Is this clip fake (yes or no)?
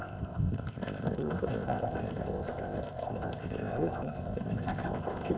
yes